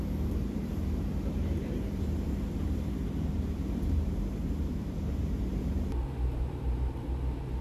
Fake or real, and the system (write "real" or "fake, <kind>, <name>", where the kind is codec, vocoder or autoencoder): fake, vocoder, BigVGAN v2